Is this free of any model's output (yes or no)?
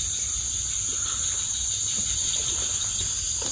yes